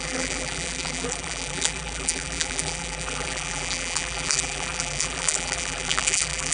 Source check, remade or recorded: remade